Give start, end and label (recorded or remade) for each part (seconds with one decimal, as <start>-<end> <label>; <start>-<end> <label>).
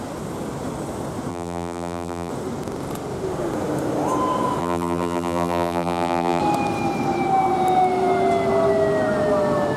0.0-1.3 recorded; 1.3-2.3 remade; 2.3-4.6 recorded; 4.6-6.4 remade; 6.4-9.8 recorded